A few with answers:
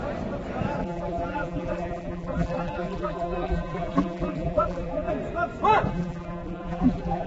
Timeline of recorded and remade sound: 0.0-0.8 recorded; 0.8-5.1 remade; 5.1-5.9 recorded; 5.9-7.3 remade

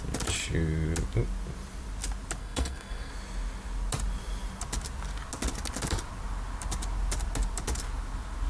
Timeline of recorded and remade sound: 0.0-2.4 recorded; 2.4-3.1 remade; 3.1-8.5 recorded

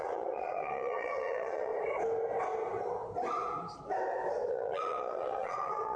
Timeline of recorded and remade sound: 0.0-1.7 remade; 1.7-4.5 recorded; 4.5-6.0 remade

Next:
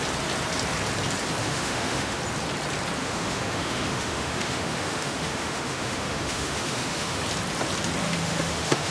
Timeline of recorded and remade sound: 0.0-1.4 recorded; 1.4-2.2 remade; 2.2-3.0 recorded; 3.0-7.2 remade; 7.2-8.0 recorded; 8.0-8.9 remade

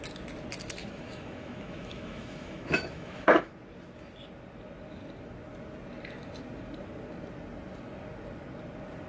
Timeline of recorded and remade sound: 0.0-0.8 recorded; 0.8-3.5 remade; 3.5-9.1 recorded

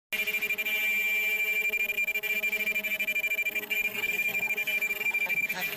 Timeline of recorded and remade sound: 0.0-3.5 recorded; 3.5-5.8 remade

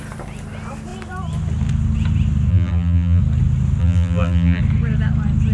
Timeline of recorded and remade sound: 0.0-2.5 recorded; 2.5-3.2 remade; 3.2-3.8 recorded; 3.8-4.6 remade; 4.6-5.5 recorded

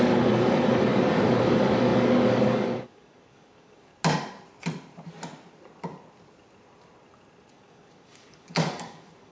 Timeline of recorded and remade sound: 0.0-3.9 remade; 3.9-7.5 recorded; 7.5-9.3 remade